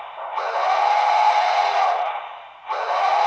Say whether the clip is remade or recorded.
remade